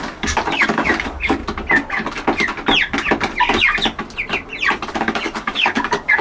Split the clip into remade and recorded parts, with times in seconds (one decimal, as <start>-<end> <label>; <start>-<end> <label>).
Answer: 0.0-1.4 remade; 1.4-4.9 recorded; 4.9-6.2 remade